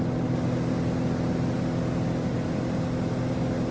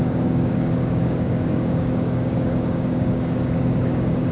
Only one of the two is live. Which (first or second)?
first